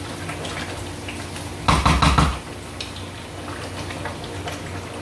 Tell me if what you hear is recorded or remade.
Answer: recorded